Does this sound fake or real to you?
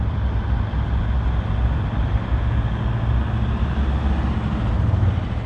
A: real